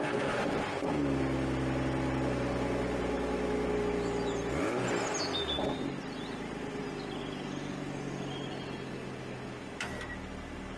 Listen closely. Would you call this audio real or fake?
real